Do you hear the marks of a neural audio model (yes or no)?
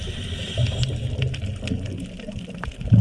no